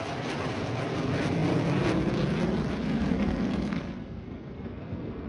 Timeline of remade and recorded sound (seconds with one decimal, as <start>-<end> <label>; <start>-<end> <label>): 0.0-2.8 recorded; 2.8-5.3 remade